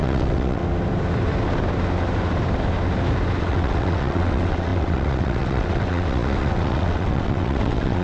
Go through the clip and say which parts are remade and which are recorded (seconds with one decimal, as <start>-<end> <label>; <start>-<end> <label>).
0.0-0.6 remade; 0.6-3.4 recorded; 3.4-8.0 remade